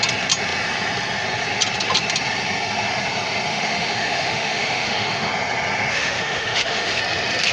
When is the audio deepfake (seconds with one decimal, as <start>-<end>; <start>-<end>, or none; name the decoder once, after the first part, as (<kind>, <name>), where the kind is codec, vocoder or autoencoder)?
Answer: 3.5-5.3 (autoencoder, DAC-VAE); 5.9-7.0